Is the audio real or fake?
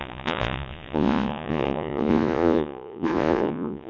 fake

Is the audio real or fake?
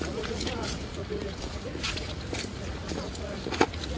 fake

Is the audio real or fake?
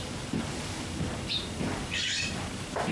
real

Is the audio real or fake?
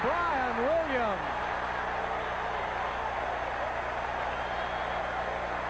real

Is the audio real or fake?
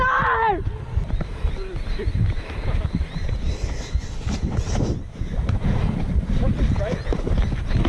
real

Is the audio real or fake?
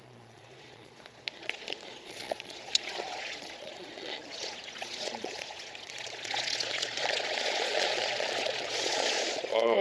fake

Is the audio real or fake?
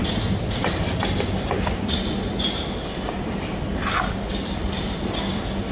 real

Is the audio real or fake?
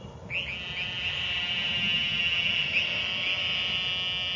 real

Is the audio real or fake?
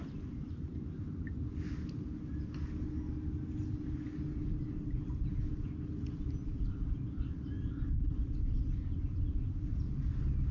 real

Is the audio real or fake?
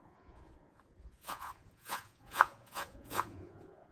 fake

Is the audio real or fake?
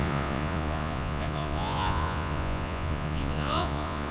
fake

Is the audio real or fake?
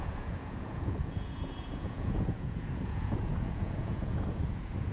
fake